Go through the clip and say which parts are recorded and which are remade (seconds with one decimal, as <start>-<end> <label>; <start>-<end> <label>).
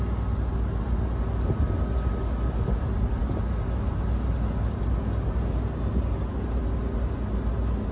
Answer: 0.0-7.9 recorded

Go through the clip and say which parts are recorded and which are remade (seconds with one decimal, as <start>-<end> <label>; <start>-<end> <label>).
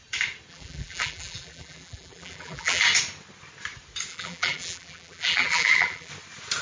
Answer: 0.0-0.5 recorded; 0.5-2.8 remade; 2.8-4.1 recorded; 4.1-6.1 remade; 6.1-6.6 recorded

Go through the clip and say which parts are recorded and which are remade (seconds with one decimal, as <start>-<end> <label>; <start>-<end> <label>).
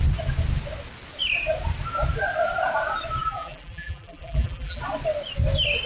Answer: 0.0-3.2 recorded; 3.2-4.8 remade; 4.8-5.9 recorded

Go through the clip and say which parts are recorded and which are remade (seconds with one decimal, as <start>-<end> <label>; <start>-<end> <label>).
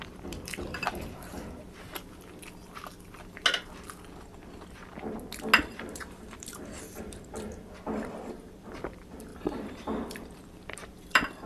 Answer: 0.0-1.3 remade; 1.3-5.7 recorded; 5.7-11.5 remade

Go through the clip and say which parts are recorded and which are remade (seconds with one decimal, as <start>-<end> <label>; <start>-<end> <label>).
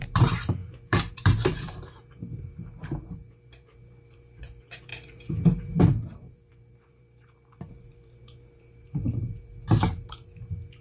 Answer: 0.0-10.8 remade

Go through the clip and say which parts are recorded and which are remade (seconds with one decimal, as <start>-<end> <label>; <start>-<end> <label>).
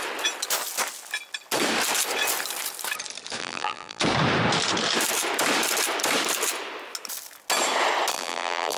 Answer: 0.0-3.4 recorded; 3.4-4.0 remade; 4.0-8.1 recorded; 8.1-8.8 remade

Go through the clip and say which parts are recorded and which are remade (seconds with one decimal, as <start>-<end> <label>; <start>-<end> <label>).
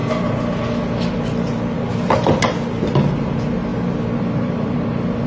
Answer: 0.0-2.7 recorded; 2.7-3.7 remade; 3.7-4.2 recorded; 4.2-5.3 remade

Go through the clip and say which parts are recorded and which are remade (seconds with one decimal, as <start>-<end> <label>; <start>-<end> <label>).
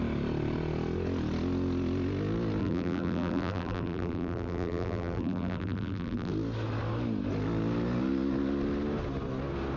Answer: 0.0-2.6 recorded; 2.6-6.3 remade; 6.3-9.8 recorded